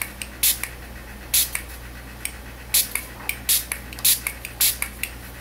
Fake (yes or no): no